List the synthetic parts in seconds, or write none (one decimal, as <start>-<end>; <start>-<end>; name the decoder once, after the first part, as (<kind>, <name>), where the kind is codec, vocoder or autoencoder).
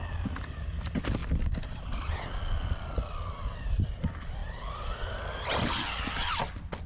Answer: none